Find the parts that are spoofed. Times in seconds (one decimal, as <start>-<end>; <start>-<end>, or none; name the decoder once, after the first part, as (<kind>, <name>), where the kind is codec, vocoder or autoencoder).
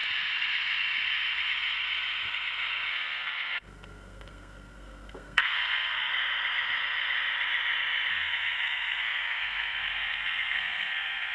2.9-6.1 (codec, SNAC); 8.1-11.3